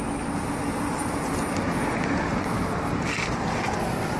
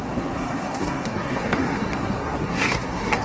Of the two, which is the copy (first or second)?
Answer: second